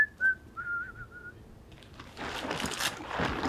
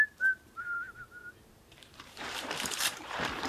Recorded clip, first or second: first